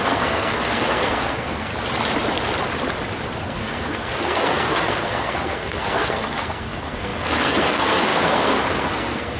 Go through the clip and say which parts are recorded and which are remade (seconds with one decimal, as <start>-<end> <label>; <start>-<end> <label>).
0.0-1.7 remade; 1.7-3.4 recorded; 3.4-9.4 remade